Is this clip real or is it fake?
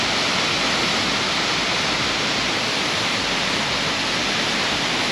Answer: real